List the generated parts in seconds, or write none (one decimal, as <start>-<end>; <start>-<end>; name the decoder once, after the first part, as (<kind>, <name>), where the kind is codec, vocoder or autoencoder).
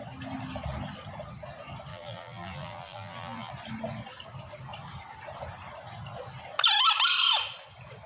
1.9-3.5 (vocoder, BigVGAN v2)